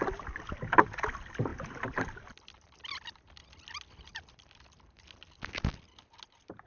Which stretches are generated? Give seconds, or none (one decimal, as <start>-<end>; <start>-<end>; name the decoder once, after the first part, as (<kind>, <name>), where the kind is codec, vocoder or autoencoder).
none